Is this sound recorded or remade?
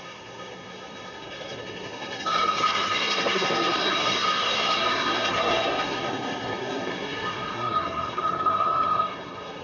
remade